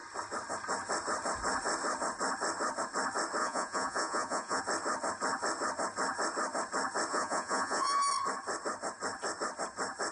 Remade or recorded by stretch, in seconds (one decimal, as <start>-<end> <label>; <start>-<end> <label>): 0.0-3.4 recorded; 3.4-4.6 remade; 4.6-7.1 recorded; 7.1-8.1 remade; 8.1-10.1 recorded